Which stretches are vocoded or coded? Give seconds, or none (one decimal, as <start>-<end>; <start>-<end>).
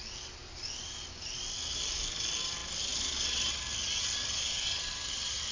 none